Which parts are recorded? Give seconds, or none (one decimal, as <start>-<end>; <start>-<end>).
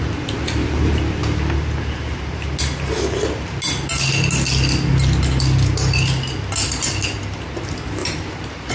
0.0-8.0